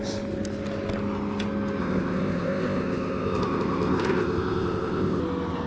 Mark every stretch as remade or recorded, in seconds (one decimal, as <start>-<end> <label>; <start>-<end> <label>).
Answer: 0.0-1.8 recorded; 1.8-5.2 remade; 5.2-5.7 recorded